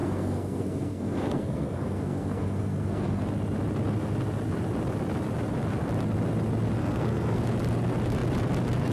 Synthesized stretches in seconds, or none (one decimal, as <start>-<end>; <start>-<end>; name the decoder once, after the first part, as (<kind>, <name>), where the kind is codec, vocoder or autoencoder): 0.0-3.2 (codec, SNAC); 6.8-7.4